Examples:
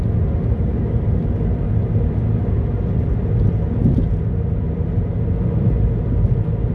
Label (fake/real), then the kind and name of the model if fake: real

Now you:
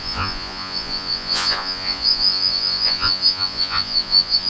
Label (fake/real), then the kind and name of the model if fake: fake, vocoder, Vocos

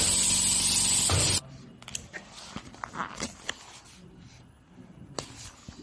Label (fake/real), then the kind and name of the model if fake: real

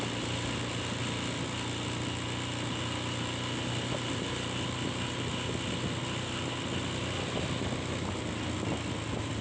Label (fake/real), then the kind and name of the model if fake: real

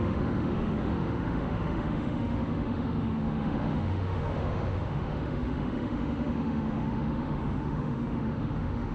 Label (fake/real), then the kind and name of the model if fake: fake, autoencoder, DAC-VAE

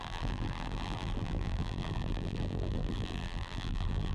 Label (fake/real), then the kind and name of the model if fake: fake, vocoder, BigVGAN v2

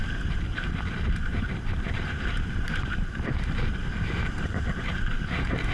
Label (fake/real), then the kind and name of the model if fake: fake, vocoder, BigVGAN v2